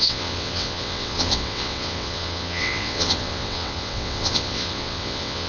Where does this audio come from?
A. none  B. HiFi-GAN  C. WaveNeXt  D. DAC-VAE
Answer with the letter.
C